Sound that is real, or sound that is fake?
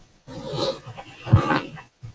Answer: fake